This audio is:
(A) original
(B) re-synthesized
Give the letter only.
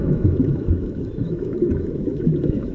B